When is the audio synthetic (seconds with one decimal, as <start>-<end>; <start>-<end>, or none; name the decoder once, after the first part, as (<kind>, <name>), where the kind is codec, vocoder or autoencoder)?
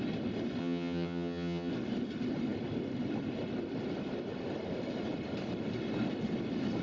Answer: 0.6-1.7 (vocoder, HiFi-GAN)